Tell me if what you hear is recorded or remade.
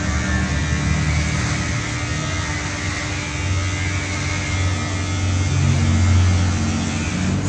recorded